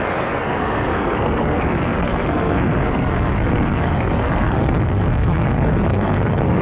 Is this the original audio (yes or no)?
no